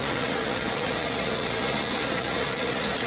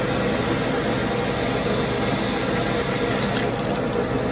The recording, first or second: second